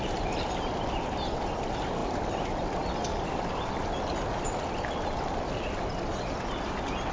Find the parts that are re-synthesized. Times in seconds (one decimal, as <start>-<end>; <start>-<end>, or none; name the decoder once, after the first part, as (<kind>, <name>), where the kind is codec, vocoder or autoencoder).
none